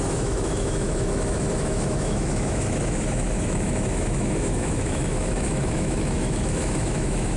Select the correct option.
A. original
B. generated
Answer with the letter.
B